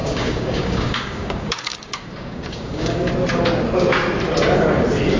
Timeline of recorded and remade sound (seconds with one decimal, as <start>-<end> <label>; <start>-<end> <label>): 0.0-3.1 remade; 3.1-5.2 recorded